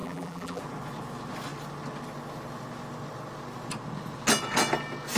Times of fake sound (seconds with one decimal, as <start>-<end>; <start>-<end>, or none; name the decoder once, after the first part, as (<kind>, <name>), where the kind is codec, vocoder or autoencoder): 0.0-0.6 (vocoder, BigVGAN v2)